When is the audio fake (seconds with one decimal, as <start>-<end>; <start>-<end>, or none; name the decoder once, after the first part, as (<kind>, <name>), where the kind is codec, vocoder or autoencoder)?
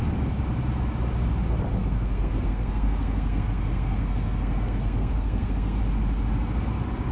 1.8-5.8 (codec, SNAC)